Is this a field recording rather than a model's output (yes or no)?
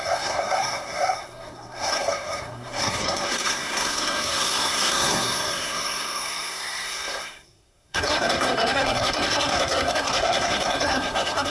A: no